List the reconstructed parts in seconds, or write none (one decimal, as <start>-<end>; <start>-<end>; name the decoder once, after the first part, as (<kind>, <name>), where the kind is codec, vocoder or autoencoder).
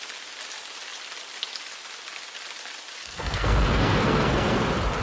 3.0-4.6 (codec, SNAC)